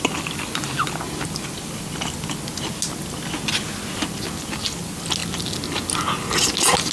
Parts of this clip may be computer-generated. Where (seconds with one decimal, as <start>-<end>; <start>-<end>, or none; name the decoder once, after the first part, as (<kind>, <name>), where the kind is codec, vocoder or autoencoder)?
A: none